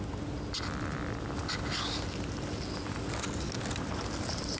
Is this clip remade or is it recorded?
recorded